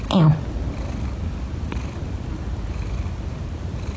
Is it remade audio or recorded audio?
recorded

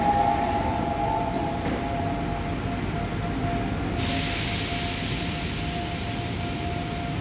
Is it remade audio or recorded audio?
recorded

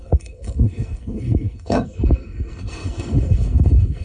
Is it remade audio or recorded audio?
remade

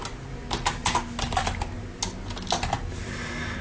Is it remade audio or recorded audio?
recorded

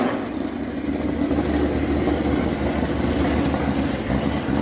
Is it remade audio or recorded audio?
recorded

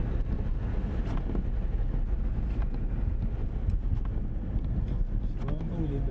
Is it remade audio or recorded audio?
recorded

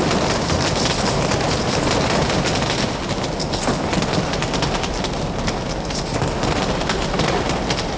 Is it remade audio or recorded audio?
recorded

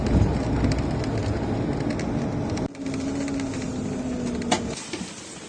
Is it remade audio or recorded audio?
recorded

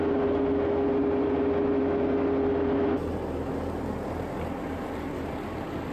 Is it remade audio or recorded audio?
recorded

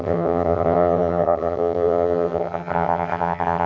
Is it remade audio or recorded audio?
remade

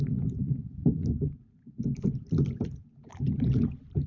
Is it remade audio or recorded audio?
remade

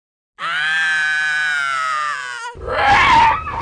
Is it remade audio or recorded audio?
recorded